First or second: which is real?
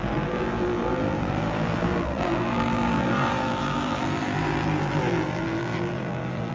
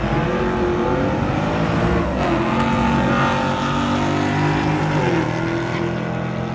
second